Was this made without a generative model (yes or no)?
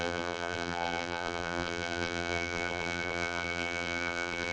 no